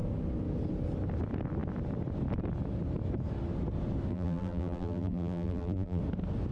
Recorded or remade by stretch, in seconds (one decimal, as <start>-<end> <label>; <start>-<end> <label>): 0.0-4.1 recorded; 4.1-6.0 remade; 6.0-6.5 recorded